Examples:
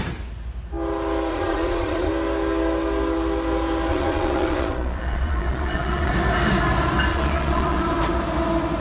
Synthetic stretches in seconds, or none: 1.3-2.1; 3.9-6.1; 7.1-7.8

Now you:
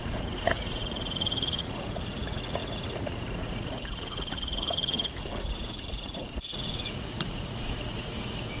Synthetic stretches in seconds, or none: 0.0-8.6